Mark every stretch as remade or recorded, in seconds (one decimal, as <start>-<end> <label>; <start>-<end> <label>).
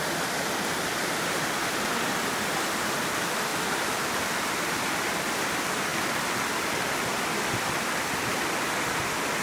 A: 0.0-9.4 recorded